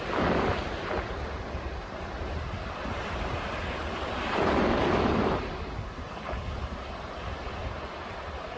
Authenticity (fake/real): real